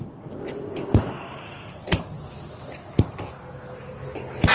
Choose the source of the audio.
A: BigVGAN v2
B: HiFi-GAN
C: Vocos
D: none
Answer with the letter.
D